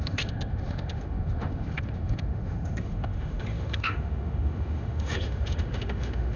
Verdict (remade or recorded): remade